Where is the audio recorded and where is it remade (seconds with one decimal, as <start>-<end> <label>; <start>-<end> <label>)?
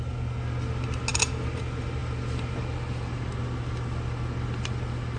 0.0-2.0 recorded; 2.0-5.2 remade